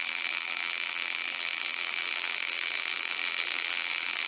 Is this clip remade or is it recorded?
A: remade